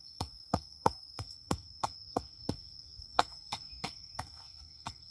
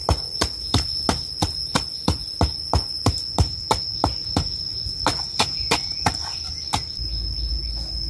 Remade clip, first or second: first